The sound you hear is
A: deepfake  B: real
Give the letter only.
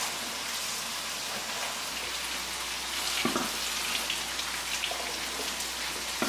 B